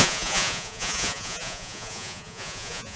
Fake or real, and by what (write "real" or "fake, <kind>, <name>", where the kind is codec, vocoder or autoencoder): fake, vocoder, Vocos